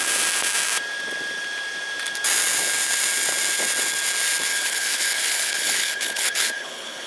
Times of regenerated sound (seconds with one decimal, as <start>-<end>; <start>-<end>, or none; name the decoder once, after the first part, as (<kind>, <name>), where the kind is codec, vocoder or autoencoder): 4.5-7.1 (codec, HILCodec)